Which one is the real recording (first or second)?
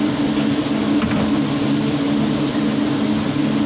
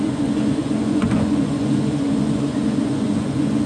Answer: first